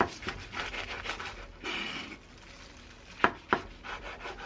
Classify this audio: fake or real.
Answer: real